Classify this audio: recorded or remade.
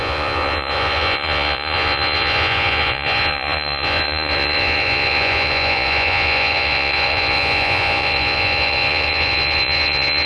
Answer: remade